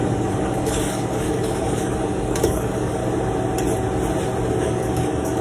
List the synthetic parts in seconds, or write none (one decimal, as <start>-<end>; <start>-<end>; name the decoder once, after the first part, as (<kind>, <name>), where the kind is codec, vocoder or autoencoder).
0.0-3.0 (codec, DAC); 4.6-5.4